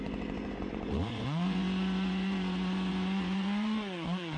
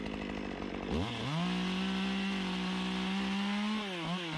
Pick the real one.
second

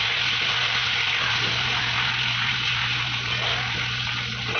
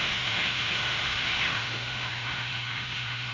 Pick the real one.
first